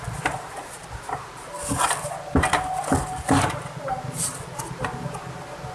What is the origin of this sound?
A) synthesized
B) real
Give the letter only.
B